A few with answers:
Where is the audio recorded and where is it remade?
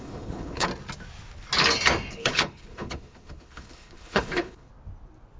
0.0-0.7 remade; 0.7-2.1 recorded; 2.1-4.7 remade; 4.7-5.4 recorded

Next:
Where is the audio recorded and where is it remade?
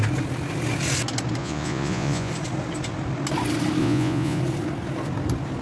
0.0-1.4 recorded; 1.4-2.3 remade; 2.3-3.8 recorded; 3.8-4.4 remade; 4.4-5.6 recorded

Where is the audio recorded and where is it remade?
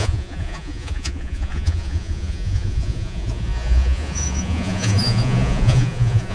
0.0-6.3 remade